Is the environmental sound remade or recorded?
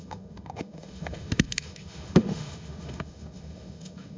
remade